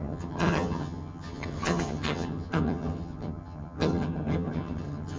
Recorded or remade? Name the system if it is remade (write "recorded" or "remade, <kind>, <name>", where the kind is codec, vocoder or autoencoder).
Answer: remade, vocoder, HiFi-GAN